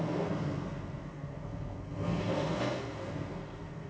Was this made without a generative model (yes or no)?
no